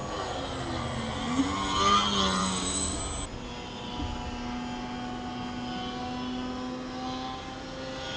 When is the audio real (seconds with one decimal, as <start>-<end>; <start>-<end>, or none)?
0.0-2.4; 3.0-8.2